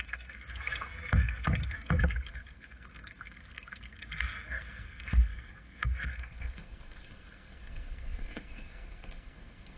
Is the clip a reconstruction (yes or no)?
yes